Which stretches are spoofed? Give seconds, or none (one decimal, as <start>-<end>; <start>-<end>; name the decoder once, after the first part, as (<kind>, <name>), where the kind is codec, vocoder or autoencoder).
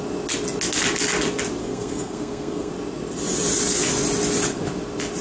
1.6-2.7 (codec, SNAC)